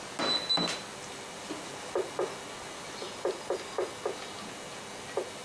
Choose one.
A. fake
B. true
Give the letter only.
B